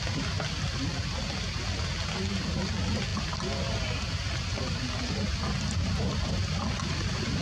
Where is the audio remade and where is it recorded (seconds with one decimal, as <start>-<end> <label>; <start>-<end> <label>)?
0.0-7.4 recorded